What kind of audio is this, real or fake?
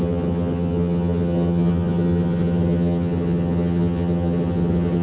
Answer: fake